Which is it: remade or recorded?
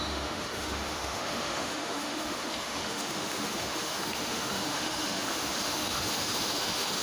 remade